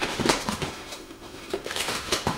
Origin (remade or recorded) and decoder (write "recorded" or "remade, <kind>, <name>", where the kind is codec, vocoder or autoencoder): remade, autoencoder, DAC-VAE